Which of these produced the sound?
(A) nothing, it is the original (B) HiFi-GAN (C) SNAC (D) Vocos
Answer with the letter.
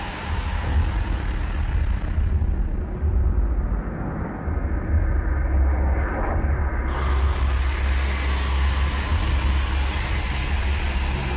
A